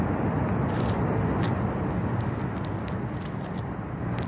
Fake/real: real